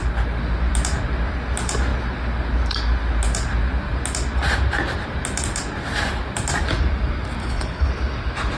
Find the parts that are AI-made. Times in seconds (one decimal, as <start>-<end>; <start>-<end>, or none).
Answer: 7.4-7.9